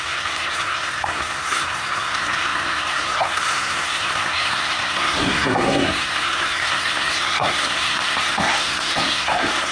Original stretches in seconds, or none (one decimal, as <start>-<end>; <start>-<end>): none